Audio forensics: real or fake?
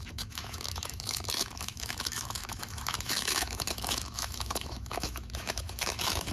fake